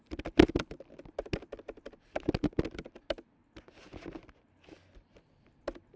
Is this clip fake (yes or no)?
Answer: no